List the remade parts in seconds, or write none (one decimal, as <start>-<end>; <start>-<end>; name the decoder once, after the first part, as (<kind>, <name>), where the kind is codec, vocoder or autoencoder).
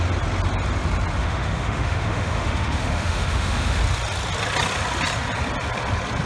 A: 1.2-3.8 (autoencoder, DAC-VAE)